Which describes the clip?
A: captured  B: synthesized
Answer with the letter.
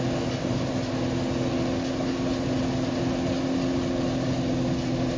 A